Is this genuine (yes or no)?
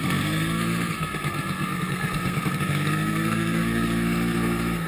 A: no